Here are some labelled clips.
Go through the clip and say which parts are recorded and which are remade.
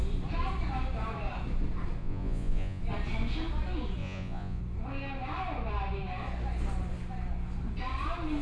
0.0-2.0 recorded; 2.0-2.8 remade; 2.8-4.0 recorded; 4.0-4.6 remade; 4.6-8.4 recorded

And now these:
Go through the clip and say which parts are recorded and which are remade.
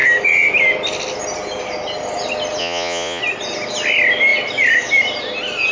0.0-2.6 recorded; 2.6-3.2 remade; 3.2-5.7 recorded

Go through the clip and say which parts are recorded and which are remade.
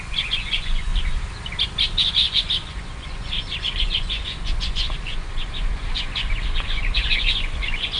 0.0-0.9 remade; 0.9-2.1 recorded; 2.1-8.0 remade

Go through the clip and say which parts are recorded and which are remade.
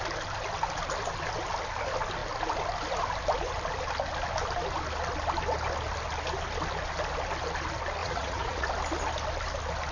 0.0-8.0 recorded; 8.0-8.7 remade; 8.7-9.9 recorded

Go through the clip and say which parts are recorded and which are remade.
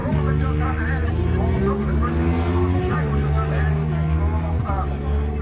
0.0-5.4 recorded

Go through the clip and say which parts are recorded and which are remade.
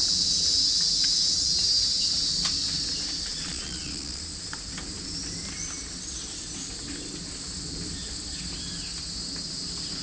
0.0-3.3 recorded; 3.3-4.2 remade; 4.2-10.0 recorded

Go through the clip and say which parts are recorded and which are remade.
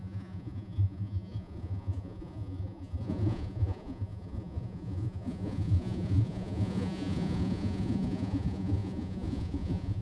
0.0-10.0 remade